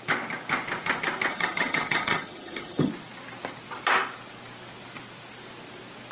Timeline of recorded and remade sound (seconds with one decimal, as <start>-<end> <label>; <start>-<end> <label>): 0.0-1.3 recorded; 1.3-2.9 remade; 2.9-6.1 recorded